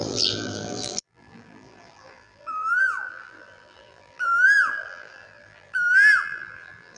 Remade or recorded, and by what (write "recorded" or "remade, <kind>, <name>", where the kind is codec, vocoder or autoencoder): remade, vocoder, BigVGAN v2